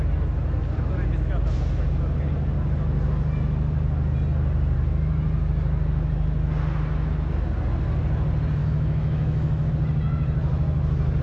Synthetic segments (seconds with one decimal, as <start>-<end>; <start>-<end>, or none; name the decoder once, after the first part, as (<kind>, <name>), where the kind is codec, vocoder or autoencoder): 8.6-9.7 (autoencoder, DAC-VAE)